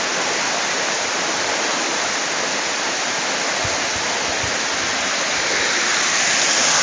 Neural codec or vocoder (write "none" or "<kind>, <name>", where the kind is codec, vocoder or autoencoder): none